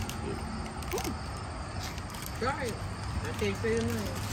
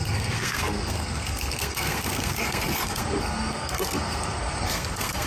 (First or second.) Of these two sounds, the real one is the first